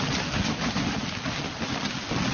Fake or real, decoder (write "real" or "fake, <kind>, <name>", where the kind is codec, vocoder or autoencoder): real